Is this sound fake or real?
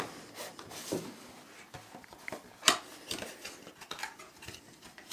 real